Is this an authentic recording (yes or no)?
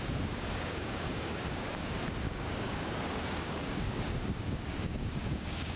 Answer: no